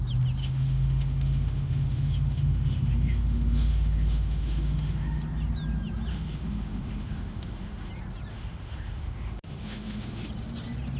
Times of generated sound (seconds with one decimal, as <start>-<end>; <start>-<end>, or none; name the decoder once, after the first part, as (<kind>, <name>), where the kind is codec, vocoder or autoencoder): 0.4-5.2 (autoencoder, DAC-VAE); 6.1-7.9; 8.3-10.3